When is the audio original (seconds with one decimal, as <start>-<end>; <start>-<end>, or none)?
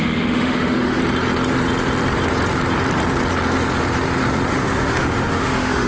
1.0-4.5